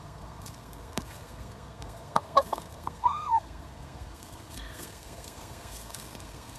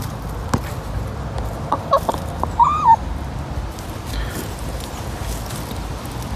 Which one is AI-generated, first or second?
first